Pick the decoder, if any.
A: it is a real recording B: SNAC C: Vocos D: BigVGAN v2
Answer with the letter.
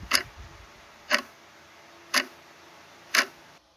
A